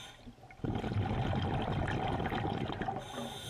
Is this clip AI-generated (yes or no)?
no